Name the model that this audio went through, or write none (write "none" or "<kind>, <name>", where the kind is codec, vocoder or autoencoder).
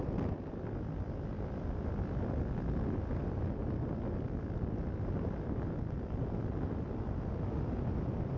none